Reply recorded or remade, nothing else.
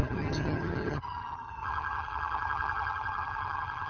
remade